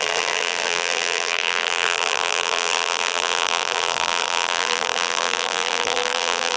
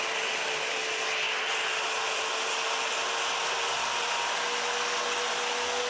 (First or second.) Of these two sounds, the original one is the second